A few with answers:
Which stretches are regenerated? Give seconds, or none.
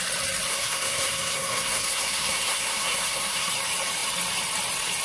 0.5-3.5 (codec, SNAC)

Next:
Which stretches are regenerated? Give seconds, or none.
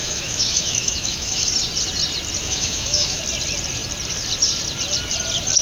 0.0-1.5 (autoencoder, DAC-VAE); 2.4-3.2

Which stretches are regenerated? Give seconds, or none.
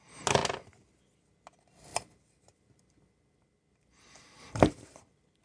1.9-5.4 (vocoder, BigVGAN v2)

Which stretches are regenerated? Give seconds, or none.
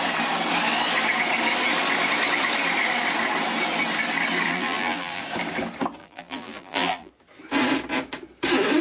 4.5-5.2 (vocoder, BigVGAN v2); 6.0-7.1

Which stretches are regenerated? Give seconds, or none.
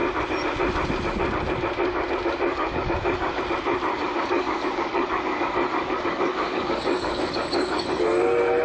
2.5-3.4 (codec, DAC); 3.9-8.0